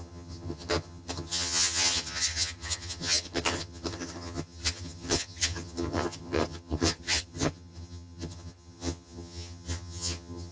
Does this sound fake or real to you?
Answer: fake